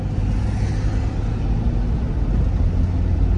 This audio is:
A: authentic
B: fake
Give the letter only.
A